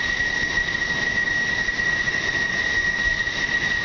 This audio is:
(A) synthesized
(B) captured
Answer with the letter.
B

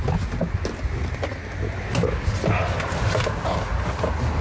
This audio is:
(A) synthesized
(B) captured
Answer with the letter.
B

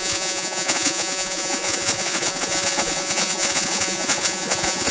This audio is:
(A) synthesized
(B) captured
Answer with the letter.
A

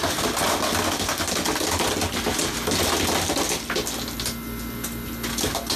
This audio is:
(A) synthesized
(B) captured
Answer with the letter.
B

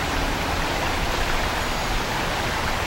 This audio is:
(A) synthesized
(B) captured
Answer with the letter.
B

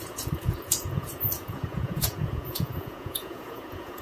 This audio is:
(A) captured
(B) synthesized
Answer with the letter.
B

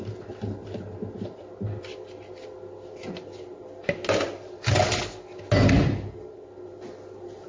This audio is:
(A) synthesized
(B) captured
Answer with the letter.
B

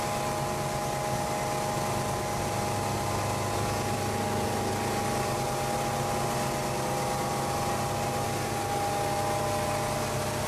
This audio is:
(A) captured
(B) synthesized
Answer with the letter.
A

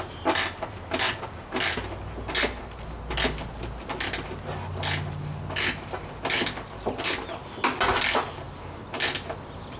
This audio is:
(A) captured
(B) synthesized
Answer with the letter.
A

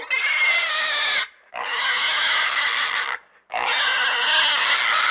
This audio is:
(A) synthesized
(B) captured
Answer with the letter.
B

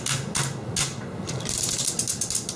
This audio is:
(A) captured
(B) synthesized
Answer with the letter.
A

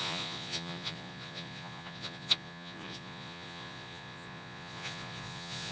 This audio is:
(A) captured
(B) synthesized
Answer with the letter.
B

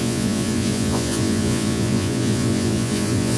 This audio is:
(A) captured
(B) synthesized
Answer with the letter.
B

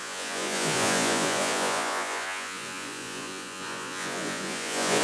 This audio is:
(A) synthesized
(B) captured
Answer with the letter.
A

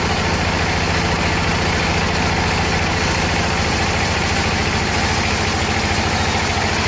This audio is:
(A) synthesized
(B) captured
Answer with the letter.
B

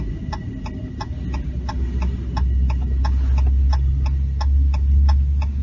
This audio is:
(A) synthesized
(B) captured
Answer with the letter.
B